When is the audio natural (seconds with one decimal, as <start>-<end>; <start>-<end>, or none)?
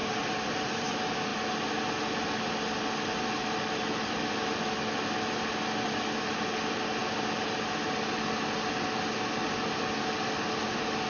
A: 0.9-11.1